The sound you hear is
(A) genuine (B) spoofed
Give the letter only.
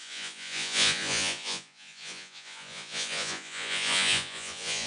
B